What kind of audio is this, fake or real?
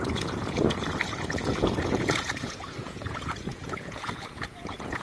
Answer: fake